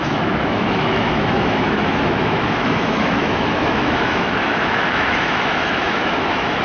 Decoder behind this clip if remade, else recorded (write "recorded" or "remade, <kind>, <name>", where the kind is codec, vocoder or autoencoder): remade, autoencoder, DAC-VAE